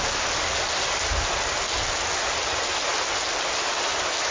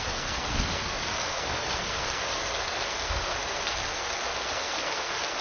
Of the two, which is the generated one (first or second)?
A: second